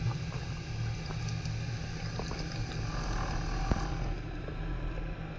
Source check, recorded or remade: recorded